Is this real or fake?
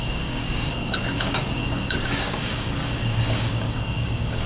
fake